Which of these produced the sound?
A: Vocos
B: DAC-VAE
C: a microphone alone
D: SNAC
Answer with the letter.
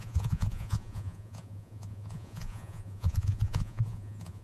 A